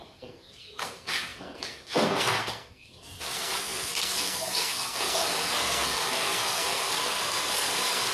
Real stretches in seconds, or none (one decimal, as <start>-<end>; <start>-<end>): none